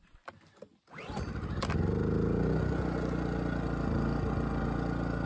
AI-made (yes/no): no